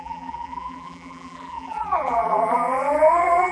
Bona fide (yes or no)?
no